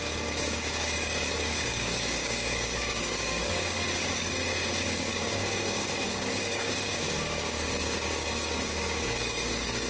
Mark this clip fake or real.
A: fake